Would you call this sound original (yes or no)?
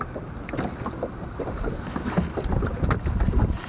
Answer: yes